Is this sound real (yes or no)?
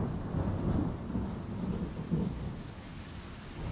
yes